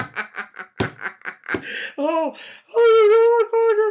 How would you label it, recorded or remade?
recorded